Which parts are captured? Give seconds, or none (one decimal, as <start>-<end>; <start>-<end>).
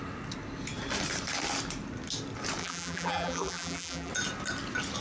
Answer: 0.0-2.6; 4.1-5.0